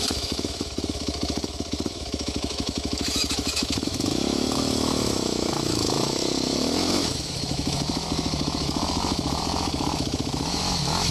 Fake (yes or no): yes